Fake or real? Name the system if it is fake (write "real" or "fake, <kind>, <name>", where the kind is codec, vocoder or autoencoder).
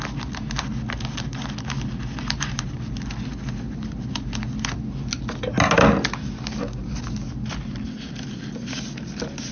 real